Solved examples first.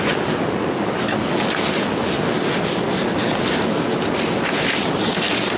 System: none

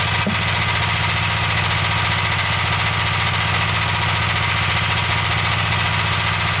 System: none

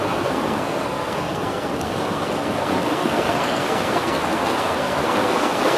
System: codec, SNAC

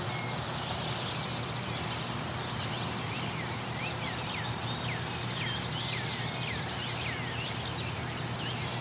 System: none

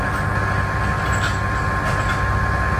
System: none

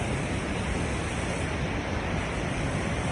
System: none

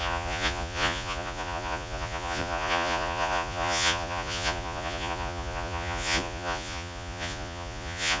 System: vocoder, Vocos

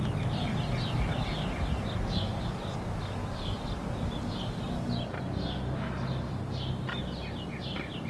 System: none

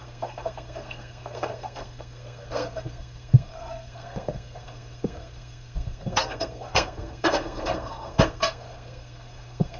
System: codec, SNAC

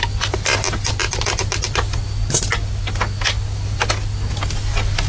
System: none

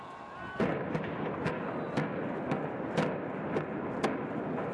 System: none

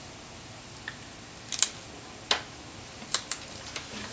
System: none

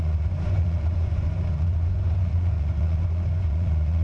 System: vocoder, Vocos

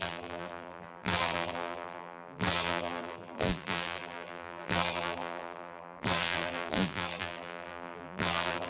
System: vocoder, BigVGAN v2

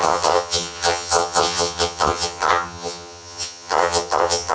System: vocoder, HiFi-GAN